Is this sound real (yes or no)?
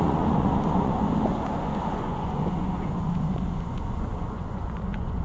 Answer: no